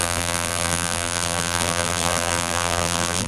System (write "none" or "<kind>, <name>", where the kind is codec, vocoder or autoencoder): vocoder, BigVGAN v2